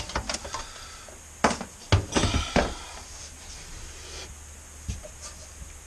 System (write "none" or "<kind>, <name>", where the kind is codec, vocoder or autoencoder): none